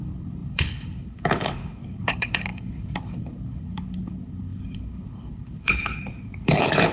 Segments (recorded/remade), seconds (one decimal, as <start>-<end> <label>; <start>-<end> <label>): 0.0-6.9 remade